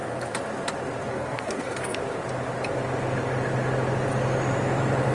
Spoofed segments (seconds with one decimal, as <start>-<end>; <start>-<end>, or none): 1.1-2.0